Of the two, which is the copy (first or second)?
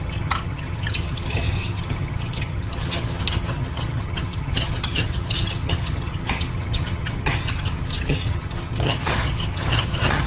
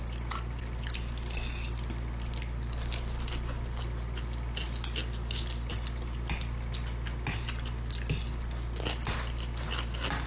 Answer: first